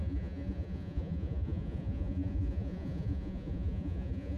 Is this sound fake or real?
fake